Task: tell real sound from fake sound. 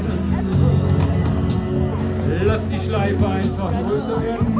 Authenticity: real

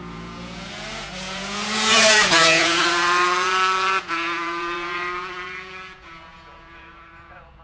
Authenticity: fake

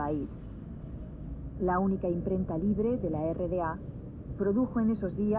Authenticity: real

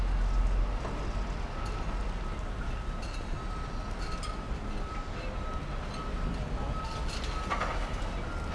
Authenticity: real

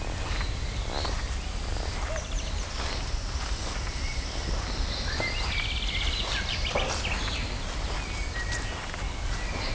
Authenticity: real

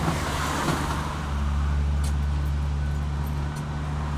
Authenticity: real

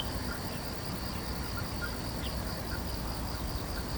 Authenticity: real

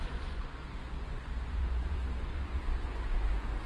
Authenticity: fake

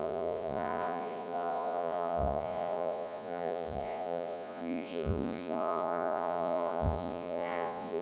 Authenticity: fake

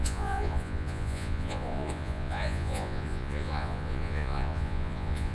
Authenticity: fake